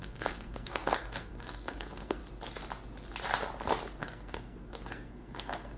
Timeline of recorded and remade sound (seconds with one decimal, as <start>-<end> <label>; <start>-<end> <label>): 0.0-2.2 remade; 2.2-4.0 recorded; 4.0-5.8 remade